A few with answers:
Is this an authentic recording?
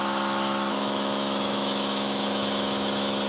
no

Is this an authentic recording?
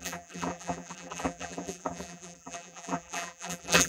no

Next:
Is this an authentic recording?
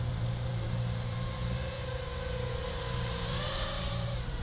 no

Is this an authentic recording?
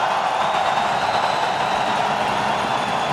yes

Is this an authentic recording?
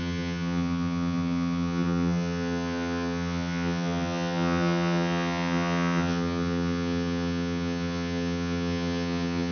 no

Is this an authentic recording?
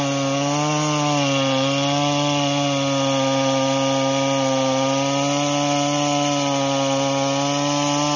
yes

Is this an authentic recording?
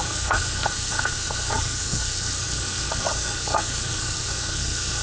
no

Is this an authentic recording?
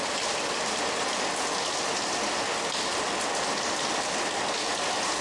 no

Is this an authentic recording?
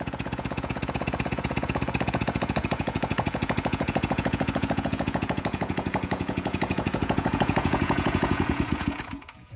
no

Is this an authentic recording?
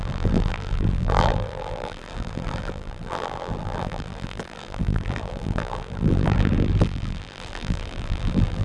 no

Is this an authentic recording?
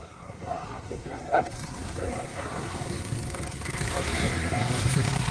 no